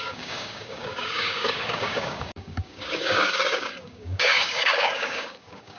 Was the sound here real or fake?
fake